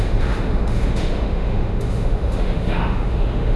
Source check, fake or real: fake